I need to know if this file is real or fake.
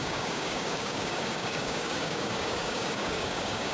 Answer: fake